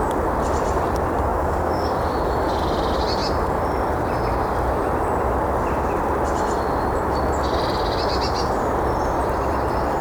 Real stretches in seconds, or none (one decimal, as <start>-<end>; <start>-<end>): 0.0-1.3; 2.0-10.0